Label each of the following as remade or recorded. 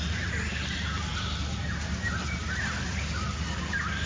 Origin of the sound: recorded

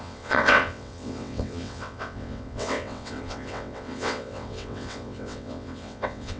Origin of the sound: remade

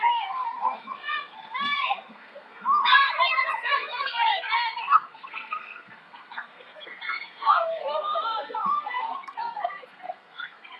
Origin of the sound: remade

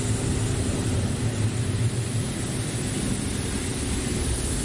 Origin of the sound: recorded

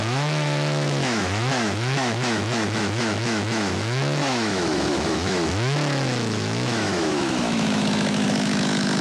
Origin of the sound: remade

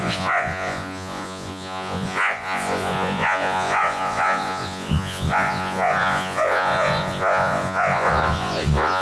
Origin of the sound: remade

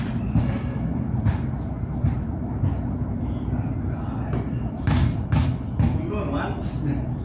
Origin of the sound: recorded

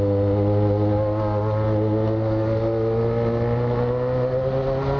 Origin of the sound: recorded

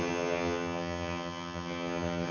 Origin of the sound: remade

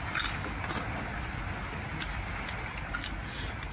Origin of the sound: recorded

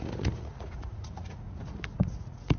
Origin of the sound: remade